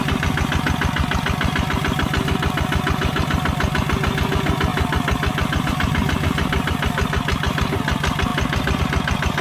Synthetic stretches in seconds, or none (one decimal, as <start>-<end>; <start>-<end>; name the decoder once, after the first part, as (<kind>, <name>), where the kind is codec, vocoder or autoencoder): none